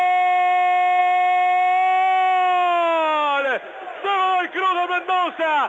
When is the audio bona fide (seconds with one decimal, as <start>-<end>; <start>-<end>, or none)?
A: 0.0-5.7